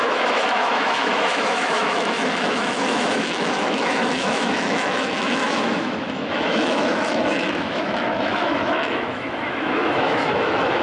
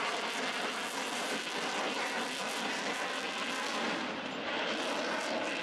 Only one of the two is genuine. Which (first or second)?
second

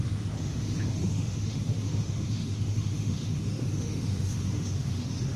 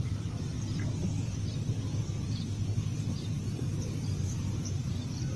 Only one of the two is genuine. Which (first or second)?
second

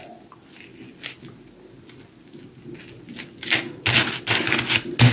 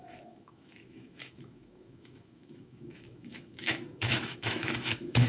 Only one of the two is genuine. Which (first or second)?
first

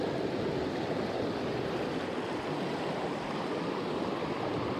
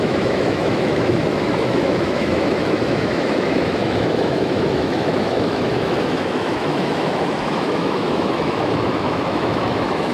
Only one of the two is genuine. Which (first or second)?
first